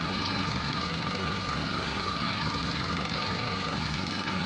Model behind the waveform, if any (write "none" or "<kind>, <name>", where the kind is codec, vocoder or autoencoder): codec, SNAC